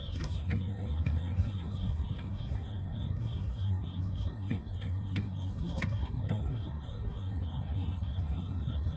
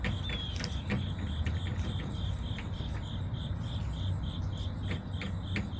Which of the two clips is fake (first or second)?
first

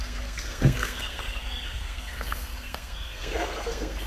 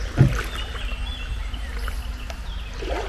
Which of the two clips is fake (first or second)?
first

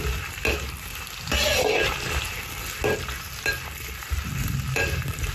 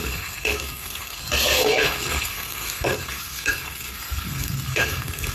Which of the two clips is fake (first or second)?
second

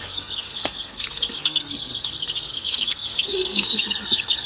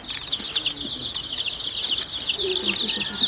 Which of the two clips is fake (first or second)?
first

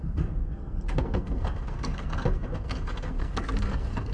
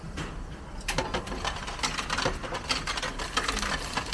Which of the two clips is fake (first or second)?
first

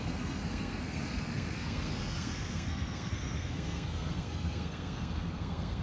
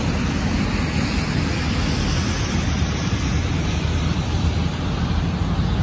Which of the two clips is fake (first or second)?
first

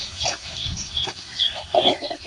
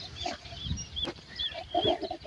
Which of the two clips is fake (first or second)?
first